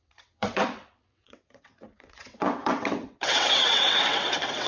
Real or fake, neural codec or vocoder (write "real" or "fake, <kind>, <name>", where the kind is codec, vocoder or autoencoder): fake, vocoder, WaveNeXt